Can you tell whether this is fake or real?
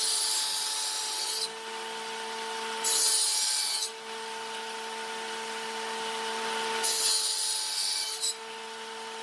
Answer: real